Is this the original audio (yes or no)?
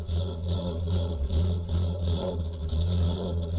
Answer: no